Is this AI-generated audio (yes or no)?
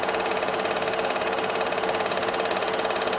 yes